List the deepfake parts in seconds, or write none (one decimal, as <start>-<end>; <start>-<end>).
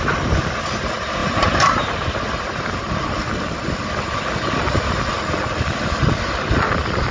1.2-3.2